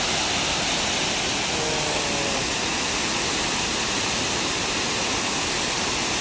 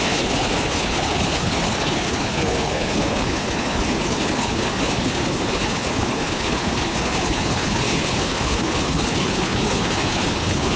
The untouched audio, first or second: first